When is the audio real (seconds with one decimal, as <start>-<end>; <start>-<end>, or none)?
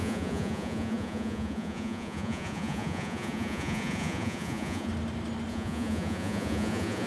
4.9-5.5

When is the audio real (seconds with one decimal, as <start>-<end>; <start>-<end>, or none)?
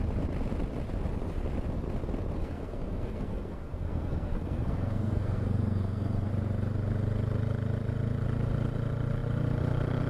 0.0-2.4; 6.3-10.1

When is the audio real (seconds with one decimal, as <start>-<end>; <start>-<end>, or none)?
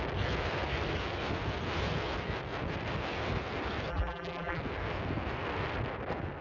0.0-3.9; 4.6-6.4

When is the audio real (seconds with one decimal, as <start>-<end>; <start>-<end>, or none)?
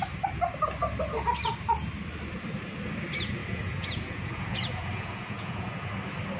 0.0-3.4; 5.9-6.4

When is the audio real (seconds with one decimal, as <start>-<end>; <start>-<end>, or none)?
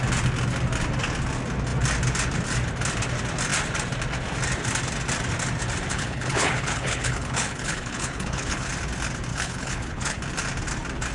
0.0-5.9; 8.7-9.3; 10.2-11.1